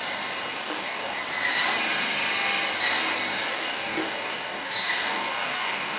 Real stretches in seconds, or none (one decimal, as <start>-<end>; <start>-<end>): 0.0-0.5; 1.2-3.5